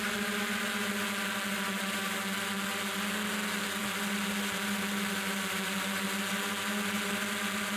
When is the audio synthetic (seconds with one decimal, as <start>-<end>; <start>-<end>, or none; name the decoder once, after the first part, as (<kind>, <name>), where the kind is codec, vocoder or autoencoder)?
none